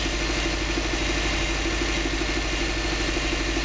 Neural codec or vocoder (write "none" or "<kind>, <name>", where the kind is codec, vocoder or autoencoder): none